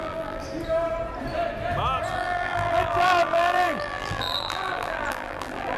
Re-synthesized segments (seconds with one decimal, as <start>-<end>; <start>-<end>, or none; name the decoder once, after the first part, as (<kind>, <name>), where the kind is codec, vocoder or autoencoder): 0.0-0.4 (vocoder, BigVGAN v2); 2.1-5.8

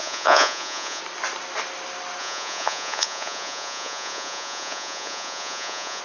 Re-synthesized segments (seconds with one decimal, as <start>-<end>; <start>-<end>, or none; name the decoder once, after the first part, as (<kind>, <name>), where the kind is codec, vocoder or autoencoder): 0.0-1.0 (vocoder, Vocos); 2.2-6.0